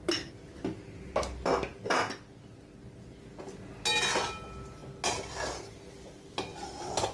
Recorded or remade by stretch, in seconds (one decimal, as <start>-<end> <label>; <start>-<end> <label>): 0.0-7.1 recorded